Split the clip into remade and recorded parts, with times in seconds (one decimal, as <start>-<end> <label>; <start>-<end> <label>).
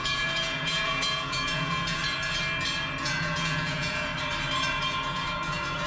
0.0-2.0 remade; 2.0-3.0 recorded; 3.0-4.1 remade; 4.1-4.7 recorded; 4.7-5.9 remade